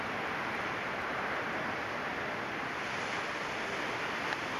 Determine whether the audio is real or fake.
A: fake